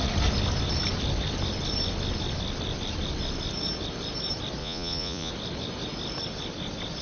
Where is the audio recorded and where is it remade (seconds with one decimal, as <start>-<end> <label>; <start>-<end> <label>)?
0.0-4.6 recorded; 4.6-5.3 remade; 5.3-7.0 recorded